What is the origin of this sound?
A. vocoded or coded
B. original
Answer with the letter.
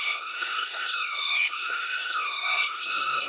A